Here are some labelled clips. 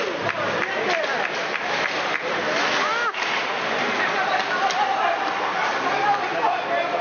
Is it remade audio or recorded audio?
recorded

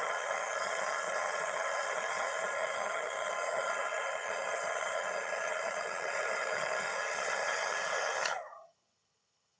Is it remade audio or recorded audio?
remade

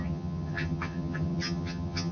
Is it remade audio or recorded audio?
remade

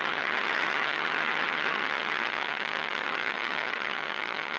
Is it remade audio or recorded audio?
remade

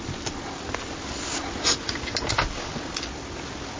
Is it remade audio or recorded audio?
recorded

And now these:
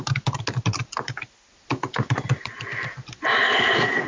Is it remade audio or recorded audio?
recorded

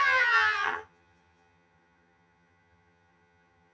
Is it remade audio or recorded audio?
remade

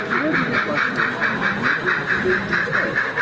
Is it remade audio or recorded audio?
recorded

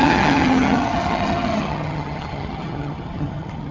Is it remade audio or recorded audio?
remade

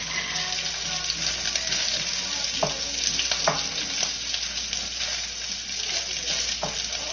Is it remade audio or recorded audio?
recorded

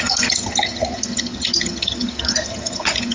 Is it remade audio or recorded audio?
remade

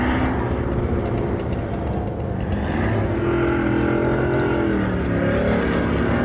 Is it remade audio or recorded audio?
recorded